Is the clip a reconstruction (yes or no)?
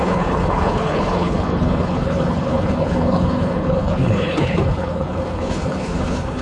yes